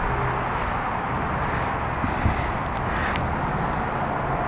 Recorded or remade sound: recorded